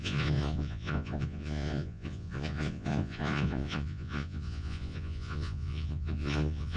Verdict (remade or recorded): remade